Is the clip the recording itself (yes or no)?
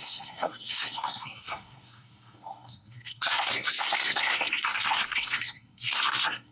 no